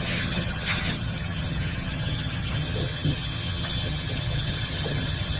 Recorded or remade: remade